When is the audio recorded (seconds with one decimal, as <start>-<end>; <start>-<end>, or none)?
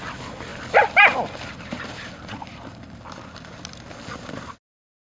0.0-0.5; 3.5-5.2